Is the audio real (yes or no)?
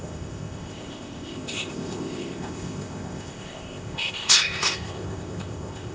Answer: no